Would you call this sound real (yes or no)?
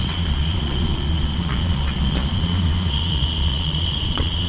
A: no